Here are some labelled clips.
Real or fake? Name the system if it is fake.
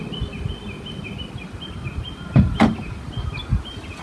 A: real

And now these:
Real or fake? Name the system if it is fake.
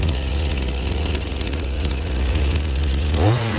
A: fake, vocoder, Vocos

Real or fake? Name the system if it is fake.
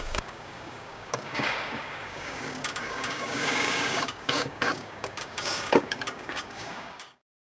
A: fake, codec, DAC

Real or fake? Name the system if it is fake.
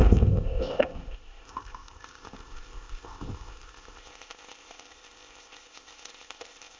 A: fake, codec, ZipCodec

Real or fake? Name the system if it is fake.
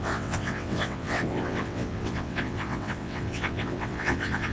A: fake, vocoder, WaveNeXt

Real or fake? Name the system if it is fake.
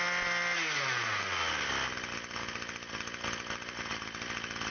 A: real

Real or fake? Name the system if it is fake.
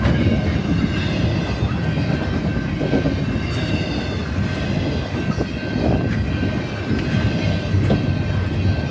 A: real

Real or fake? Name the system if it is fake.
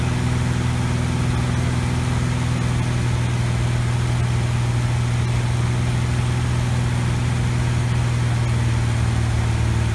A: real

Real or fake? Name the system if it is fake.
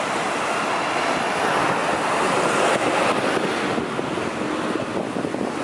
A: real